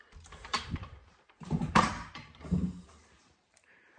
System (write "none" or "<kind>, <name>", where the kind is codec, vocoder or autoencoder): vocoder, BigVGAN v2